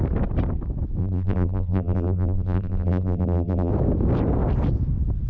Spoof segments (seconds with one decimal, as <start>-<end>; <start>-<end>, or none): 1.0-3.7